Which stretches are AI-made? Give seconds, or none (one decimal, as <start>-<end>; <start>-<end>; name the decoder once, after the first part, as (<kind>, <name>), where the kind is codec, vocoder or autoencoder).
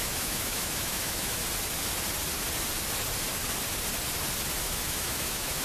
0.0-1.4 (autoencoder, DAC-VAE); 4.6-5.6